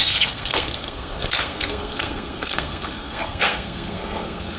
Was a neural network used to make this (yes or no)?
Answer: yes